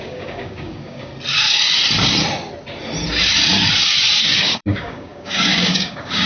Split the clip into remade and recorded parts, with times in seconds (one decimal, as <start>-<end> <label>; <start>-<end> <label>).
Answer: 0.0-1.1 remade; 1.1-4.2 recorded; 4.2-6.3 remade